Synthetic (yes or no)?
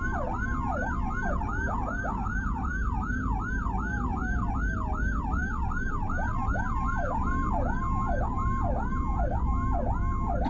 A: no